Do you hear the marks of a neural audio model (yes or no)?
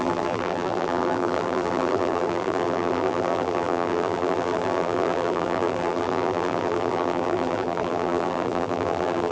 yes